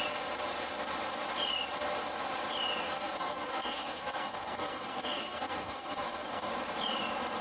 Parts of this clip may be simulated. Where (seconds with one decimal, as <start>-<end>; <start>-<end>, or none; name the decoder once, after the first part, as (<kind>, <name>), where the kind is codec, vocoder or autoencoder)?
2.8-6.5 (codec, SNAC)